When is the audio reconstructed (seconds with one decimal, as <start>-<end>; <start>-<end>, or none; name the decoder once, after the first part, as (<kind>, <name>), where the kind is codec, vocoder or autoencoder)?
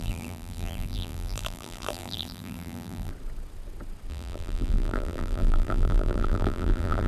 0.0-3.1 (vocoder, BigVGAN v2); 4.1-7.1